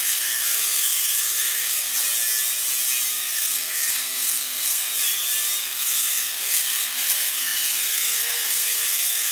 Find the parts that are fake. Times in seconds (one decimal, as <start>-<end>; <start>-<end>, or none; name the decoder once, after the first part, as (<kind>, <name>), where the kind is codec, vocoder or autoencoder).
0.0-1.9 (codec, SNAC); 3.1-4.9; 5.6-9.3